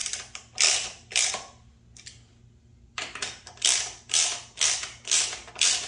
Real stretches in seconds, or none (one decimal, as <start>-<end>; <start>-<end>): 0.0-5.9